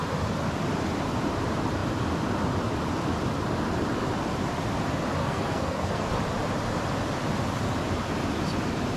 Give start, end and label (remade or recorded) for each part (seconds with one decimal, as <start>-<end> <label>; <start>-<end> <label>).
0.0-5.2 recorded; 5.2-6.1 remade; 6.1-9.0 recorded